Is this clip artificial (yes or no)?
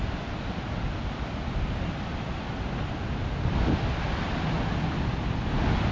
no